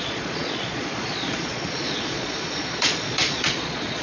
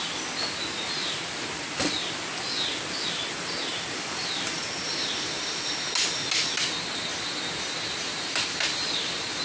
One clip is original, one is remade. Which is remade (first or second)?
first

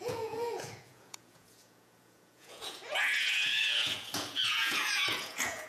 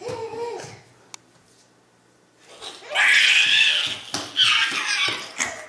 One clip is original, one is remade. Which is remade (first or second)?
first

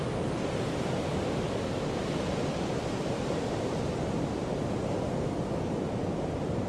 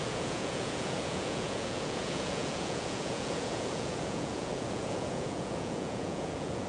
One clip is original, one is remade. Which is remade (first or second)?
second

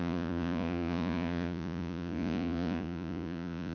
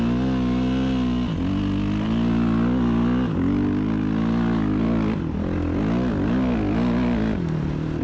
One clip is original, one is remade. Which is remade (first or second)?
first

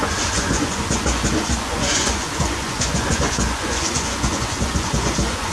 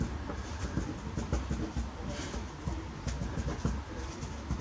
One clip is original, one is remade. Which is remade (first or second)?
first